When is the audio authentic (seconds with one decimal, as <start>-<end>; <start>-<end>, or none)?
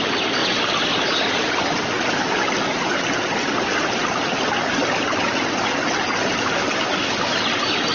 0.0-7.9